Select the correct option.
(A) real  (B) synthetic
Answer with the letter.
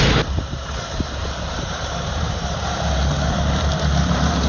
B